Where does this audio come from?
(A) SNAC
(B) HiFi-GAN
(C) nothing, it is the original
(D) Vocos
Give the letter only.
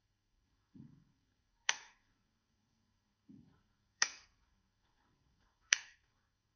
A